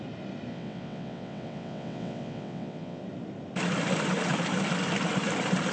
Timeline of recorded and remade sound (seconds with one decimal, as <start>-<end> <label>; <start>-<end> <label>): 0.0-0.5 recorded; 0.5-3.0 remade; 3.0-5.7 recorded